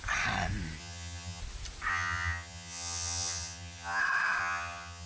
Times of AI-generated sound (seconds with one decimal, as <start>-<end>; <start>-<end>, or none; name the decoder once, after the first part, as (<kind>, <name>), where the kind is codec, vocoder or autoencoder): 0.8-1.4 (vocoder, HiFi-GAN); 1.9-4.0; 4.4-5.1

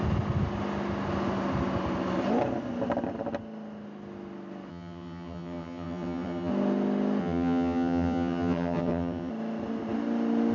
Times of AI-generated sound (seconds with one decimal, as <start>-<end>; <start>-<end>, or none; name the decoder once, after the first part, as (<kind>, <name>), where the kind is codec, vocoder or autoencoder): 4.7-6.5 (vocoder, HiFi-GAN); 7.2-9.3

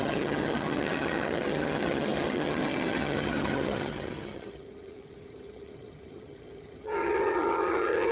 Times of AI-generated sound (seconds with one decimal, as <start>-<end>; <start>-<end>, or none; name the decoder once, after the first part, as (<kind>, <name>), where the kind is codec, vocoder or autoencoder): 0.0-8.1 (vocoder, HiFi-GAN)